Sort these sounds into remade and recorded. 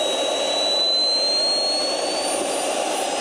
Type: recorded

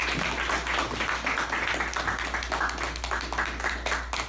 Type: recorded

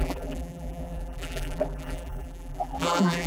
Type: remade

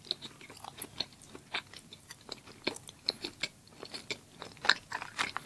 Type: recorded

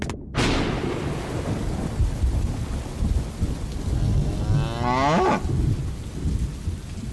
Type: recorded